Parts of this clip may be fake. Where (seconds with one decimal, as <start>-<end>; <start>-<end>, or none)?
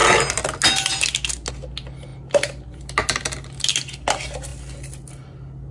none